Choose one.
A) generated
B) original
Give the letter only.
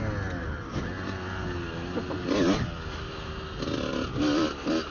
B